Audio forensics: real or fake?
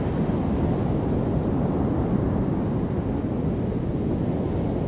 real